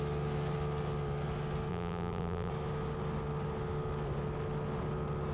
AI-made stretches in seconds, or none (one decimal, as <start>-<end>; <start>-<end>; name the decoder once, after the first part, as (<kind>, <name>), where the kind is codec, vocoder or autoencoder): 1.7-2.5 (vocoder, BigVGAN v2)